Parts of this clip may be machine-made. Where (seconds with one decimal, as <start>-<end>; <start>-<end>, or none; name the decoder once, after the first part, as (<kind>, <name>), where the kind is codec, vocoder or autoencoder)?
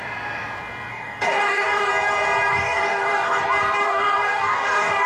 0.9-1.9 (codec, DAC); 2.5-3.4; 3.8-5.1